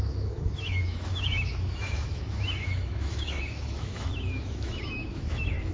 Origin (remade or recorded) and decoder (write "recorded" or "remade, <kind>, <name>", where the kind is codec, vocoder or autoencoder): remade, autoencoder, DAC-VAE